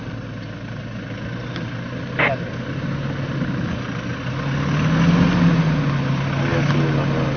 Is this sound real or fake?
real